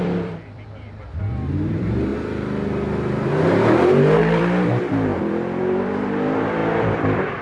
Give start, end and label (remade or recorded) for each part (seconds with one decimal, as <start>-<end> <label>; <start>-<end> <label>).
0.0-2.1 remade; 2.1-4.2 recorded; 4.2-7.4 remade